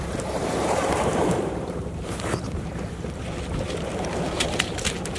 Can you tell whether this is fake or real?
fake